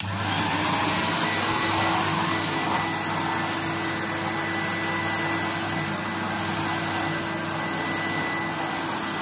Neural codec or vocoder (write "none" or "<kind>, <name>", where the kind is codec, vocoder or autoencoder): none